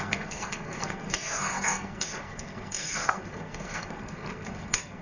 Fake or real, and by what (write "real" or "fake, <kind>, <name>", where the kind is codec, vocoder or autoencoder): fake, codec, SNAC